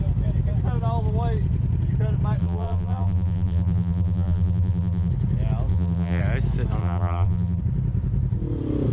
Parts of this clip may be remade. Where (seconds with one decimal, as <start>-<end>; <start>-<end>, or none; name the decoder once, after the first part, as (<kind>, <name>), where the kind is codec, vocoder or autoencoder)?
2.4-5.1 (vocoder, BigVGAN v2); 5.7-6.2; 6.8-7.6